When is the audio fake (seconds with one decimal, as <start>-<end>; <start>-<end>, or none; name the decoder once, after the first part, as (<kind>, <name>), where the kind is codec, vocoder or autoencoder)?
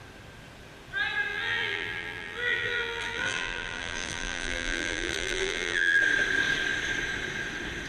1.3-6.0 (vocoder, BigVGAN v2)